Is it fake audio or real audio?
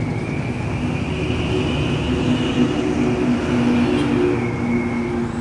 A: real